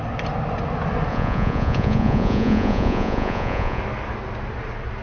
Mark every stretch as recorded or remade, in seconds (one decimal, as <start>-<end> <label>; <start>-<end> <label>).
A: 0.0-1.1 recorded; 1.1-3.8 remade; 3.8-5.0 recorded